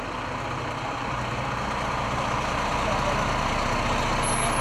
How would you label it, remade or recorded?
recorded